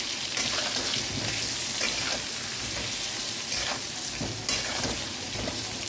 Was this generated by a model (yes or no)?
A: no